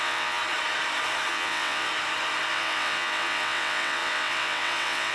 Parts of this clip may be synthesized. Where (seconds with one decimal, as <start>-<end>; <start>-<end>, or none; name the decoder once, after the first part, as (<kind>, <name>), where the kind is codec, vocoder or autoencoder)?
0.0-0.4 (vocoder, WaveNeXt); 1.3-1.9; 2.5-5.1